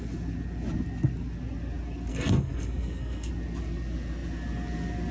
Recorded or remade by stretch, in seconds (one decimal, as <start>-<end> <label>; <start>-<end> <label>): 0.0-2.1 recorded; 2.1-3.3 remade; 3.3-5.1 recorded

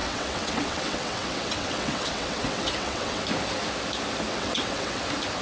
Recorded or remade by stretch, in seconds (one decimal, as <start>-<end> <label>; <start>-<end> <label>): 0.0-3.2 remade; 3.2-4.3 recorded; 4.3-5.0 remade; 5.0-5.4 recorded